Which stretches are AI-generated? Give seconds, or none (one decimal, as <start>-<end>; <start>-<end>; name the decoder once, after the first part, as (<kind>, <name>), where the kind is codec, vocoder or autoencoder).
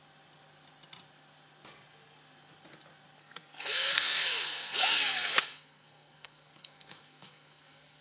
3.2-8.0 (codec, SNAC)